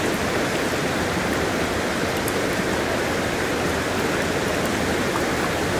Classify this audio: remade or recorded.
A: recorded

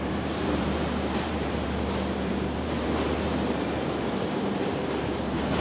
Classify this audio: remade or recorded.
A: remade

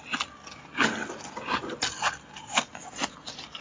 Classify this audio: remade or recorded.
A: recorded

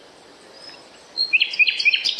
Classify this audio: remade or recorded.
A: recorded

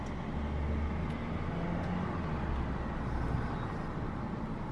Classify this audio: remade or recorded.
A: recorded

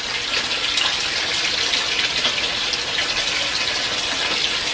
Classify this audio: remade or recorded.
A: recorded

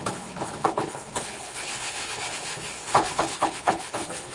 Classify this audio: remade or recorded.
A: remade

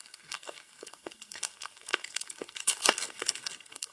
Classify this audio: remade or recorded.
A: remade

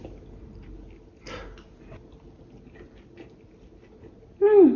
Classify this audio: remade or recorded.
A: recorded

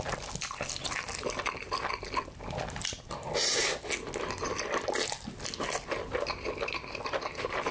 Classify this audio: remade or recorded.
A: recorded